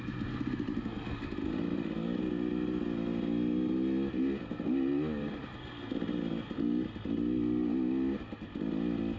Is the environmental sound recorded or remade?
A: recorded